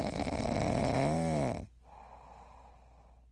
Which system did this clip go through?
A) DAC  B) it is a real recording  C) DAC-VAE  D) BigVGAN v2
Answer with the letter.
B